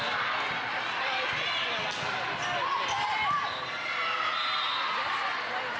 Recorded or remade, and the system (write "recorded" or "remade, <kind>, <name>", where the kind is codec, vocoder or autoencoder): recorded